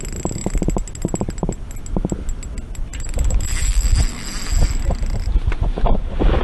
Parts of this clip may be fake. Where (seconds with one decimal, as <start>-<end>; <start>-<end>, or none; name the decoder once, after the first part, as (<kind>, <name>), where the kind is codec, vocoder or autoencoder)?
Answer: 2.9-3.7 (vocoder, BigVGAN v2)